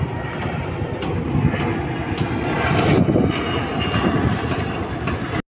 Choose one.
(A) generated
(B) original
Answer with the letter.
B